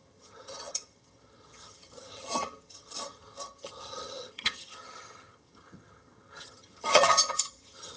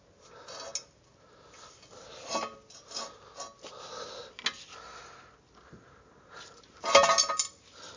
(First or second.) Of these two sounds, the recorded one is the second